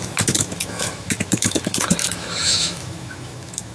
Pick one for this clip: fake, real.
fake